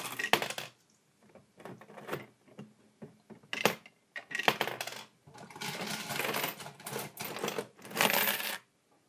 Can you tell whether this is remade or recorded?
recorded